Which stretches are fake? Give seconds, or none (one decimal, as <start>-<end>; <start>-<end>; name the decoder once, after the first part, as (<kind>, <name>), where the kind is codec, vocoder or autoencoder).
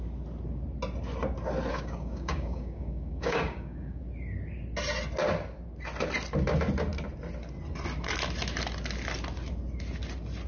1.7-4.0 (codec, DAC)